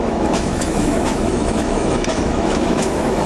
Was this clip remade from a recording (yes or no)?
yes